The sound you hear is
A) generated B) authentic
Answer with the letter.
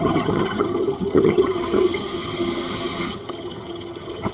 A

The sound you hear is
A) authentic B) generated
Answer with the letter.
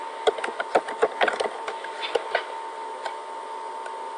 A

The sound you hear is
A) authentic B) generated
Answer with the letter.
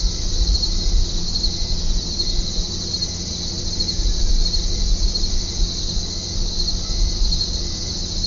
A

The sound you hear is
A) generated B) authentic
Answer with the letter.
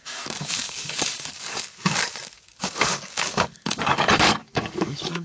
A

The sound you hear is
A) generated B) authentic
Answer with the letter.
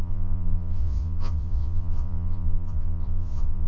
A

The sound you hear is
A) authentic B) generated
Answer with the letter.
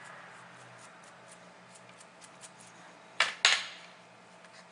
A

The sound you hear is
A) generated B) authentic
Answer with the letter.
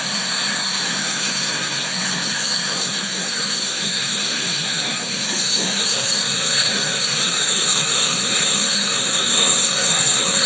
A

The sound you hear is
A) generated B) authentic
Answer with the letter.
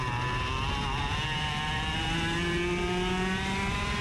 B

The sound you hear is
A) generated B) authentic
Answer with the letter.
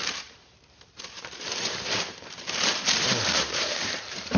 A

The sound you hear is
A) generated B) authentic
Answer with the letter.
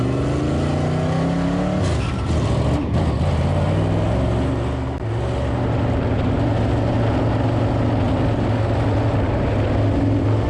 B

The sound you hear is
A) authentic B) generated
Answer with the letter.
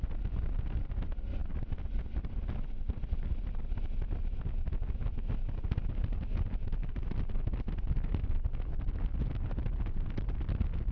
A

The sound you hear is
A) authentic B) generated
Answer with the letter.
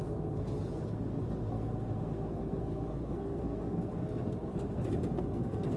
B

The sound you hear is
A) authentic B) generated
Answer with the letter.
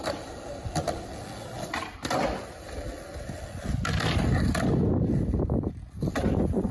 A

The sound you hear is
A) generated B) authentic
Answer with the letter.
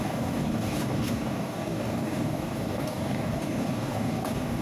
A